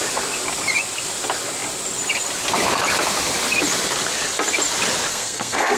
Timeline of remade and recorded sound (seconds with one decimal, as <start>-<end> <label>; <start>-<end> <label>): 0.0-5.1 recorded; 5.1-5.8 remade